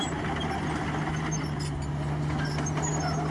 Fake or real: real